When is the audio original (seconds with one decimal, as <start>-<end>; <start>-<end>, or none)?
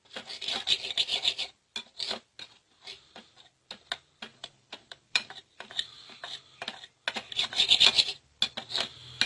0.0-4.3; 5.5-9.3